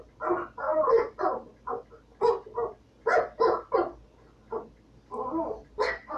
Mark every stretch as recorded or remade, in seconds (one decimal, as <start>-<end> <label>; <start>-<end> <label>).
0.0-6.2 recorded